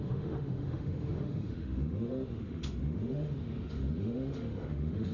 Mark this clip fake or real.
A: fake